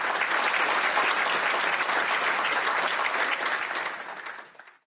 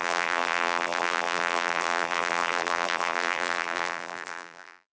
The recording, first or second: first